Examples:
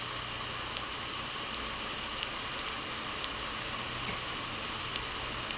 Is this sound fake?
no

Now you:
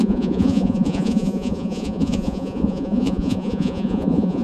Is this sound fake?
yes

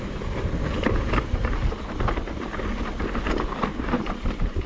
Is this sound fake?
no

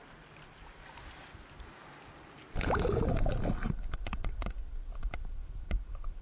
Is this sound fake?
no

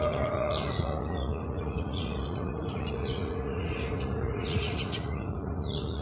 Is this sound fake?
yes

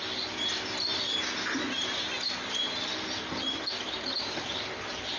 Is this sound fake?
no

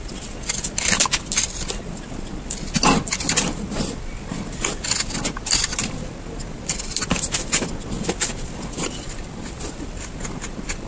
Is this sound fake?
yes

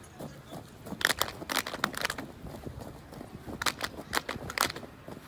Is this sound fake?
no